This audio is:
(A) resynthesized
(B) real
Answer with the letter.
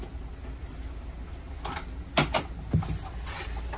B